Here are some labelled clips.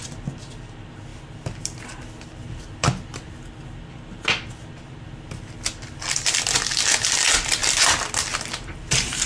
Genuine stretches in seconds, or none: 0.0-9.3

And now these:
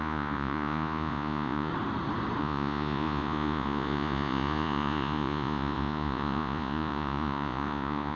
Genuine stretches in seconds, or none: 1.7-2.4

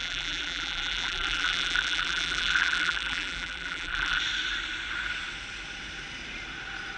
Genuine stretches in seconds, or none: 4.2-7.0

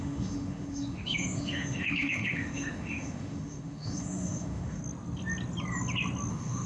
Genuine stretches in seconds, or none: 4.8-6.3

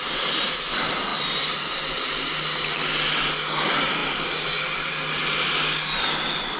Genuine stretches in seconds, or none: 0.0-6.6

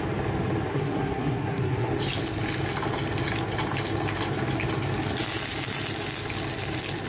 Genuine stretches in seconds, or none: 0.0-0.7; 1.9-7.1

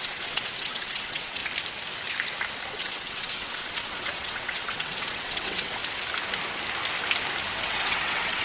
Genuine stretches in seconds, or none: 1.4-2.7; 5.8-7.5